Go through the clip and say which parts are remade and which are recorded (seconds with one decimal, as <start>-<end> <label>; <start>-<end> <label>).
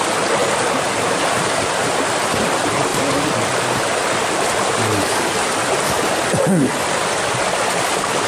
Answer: 0.0-8.3 recorded